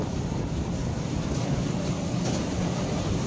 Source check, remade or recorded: recorded